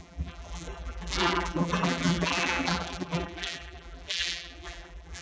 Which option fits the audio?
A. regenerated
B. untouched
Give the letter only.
A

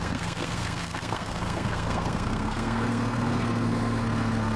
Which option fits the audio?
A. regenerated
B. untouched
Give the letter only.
A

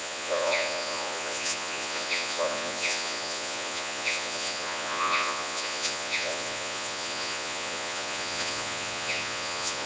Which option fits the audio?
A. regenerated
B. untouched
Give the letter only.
A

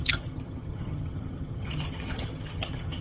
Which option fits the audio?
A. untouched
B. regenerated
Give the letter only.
B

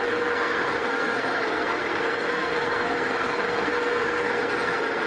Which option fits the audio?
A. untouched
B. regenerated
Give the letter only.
B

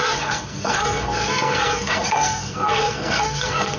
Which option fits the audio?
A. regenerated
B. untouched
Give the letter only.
A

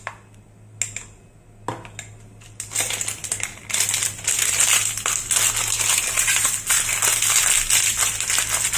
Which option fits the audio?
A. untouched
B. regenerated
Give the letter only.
A